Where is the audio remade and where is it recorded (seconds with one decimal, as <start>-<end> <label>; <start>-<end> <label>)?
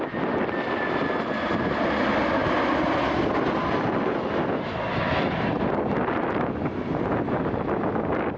0.0-8.4 recorded